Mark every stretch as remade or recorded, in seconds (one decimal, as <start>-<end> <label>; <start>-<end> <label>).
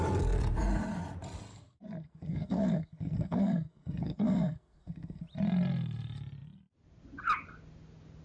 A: 0.0-1.5 recorded; 1.5-5.2 remade; 5.2-8.2 recorded